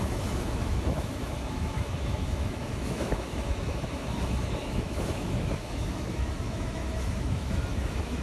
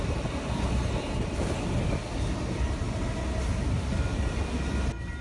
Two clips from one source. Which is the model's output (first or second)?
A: first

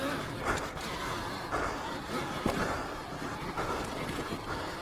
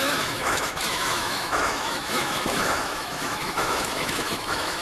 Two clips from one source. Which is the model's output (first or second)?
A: second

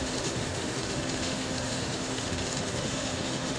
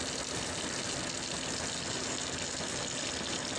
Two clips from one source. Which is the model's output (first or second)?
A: first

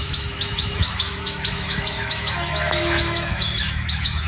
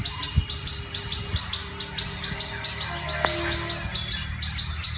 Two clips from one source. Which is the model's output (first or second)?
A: first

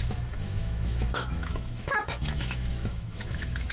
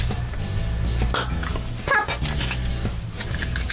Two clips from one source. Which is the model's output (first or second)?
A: first